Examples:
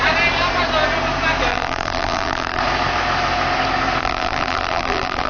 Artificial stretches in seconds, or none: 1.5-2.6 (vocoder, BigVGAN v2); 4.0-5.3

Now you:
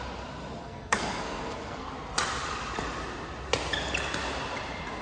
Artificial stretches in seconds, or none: 0.6-1.9 (codec, SNAC)

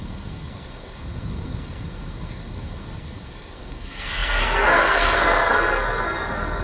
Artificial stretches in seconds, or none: 0.0-6.6 (codec, SNAC)

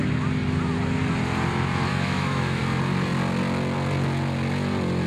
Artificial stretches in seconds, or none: 1.9-2.6 (autoencoder, DAC-VAE)